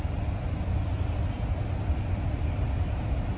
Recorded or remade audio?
recorded